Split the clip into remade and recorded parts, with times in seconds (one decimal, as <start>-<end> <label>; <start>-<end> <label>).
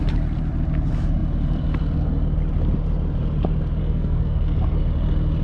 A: 0.0-3.8 recorded; 3.8-4.8 remade; 4.8-5.4 recorded